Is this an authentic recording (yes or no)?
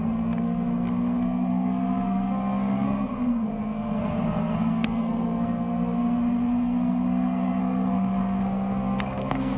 no